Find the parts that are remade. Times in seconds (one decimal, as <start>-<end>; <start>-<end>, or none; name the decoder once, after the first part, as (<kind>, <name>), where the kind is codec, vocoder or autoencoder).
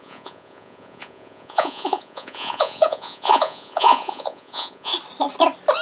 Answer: 0.0-4.9 (vocoder, Vocos)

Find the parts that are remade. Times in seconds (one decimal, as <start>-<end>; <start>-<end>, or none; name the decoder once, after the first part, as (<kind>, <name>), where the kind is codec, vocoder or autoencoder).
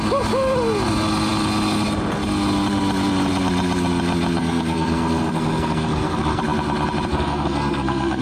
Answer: 4.4-6.4 (codec, SNAC); 7.1-8.2